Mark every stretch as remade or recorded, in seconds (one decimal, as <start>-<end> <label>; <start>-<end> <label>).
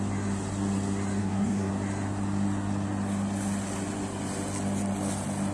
0.0-1.2 recorded; 1.2-1.7 remade; 1.7-5.5 recorded